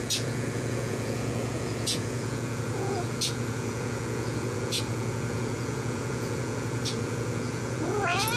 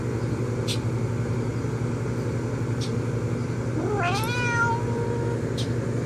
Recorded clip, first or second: second